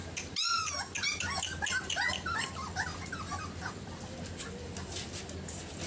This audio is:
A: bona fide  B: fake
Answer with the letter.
A